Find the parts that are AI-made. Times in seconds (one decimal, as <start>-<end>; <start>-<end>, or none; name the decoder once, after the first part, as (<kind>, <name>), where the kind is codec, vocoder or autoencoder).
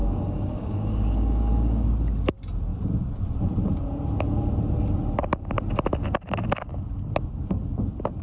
0.0-1.9 (codec, DAC)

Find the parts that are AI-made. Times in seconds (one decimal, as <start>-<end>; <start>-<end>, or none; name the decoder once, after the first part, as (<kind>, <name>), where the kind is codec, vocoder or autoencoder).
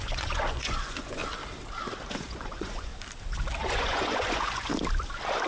0.0-1.2 (vocoder, Vocos); 2.1-2.9; 3.6-4.7